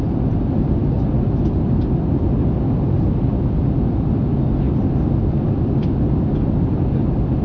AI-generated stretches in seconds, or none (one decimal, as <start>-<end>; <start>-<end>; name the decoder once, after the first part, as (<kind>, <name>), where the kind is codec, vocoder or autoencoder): none